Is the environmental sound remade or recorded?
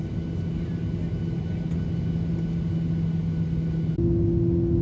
recorded